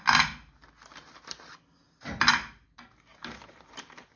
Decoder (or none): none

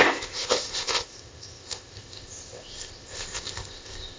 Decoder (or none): codec, ZipCodec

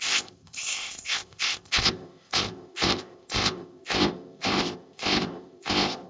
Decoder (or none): codec, ZipCodec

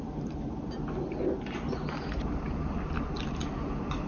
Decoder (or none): none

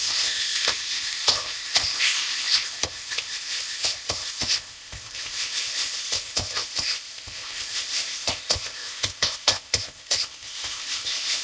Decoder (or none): codec, ZipCodec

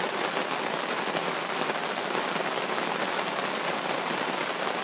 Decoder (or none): none